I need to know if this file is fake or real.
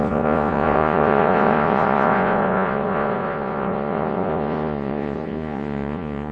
fake